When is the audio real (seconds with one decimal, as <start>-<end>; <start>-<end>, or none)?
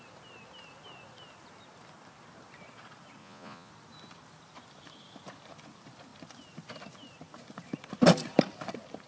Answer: 0.0-3.2; 3.7-9.1